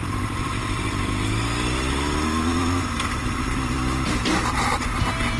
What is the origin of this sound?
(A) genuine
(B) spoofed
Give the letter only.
A